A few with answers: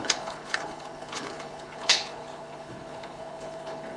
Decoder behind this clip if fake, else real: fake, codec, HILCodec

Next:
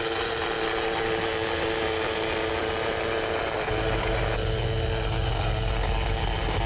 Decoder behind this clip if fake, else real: real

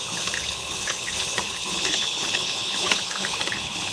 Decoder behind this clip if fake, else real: fake, codec, HILCodec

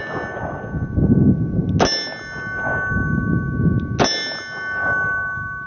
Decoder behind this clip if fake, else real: real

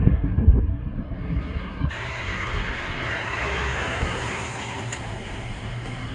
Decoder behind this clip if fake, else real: fake, codec, SNAC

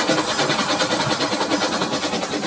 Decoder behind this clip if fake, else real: real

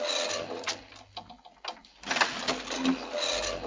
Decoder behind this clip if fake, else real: real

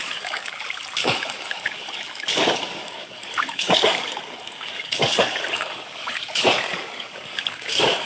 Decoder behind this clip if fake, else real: fake, codec, DAC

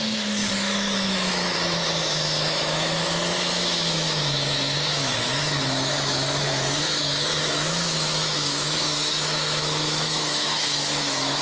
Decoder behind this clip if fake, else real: fake, autoencoder, DAC-VAE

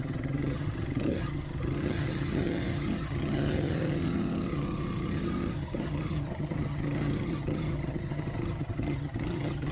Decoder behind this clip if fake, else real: fake, vocoder, HiFi-GAN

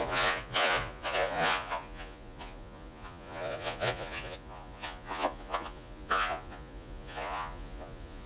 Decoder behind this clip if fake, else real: fake, vocoder, Vocos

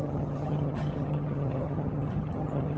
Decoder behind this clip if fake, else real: fake, vocoder, HiFi-GAN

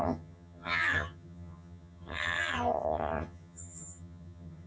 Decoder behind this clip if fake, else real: fake, vocoder, HiFi-GAN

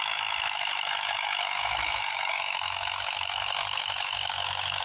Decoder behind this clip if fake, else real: fake, autoencoder, DAC-VAE